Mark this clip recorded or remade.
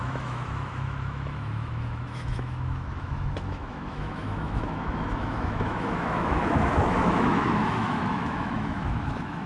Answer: remade